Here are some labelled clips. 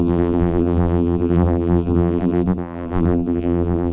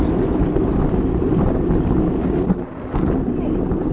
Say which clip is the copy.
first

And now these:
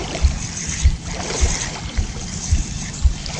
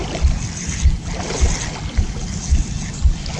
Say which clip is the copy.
first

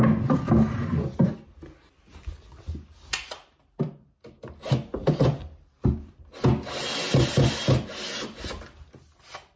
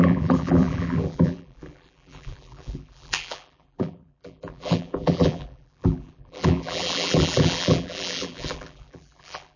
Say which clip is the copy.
second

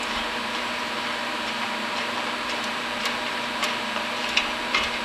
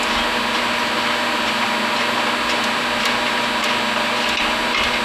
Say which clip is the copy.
first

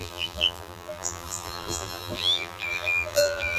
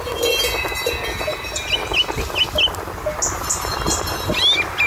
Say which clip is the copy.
first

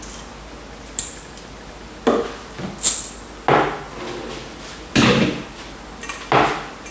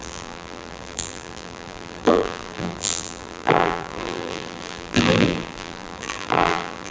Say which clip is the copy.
second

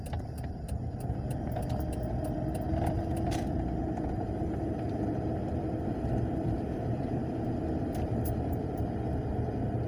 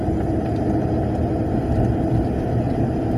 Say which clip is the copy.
first